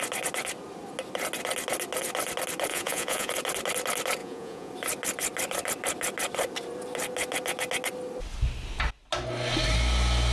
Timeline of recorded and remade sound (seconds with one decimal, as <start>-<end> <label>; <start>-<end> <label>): 0.0-2.7 recorded; 2.7-3.3 remade; 3.3-4.2 recorded; 4.2-4.7 remade; 4.7-10.3 recorded